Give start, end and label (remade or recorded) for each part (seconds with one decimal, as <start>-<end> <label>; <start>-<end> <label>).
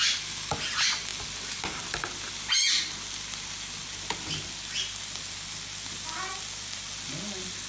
0.0-7.7 recorded